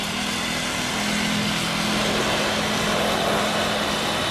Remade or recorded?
recorded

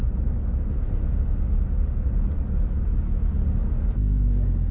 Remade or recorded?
recorded